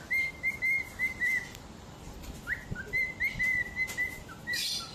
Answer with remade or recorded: recorded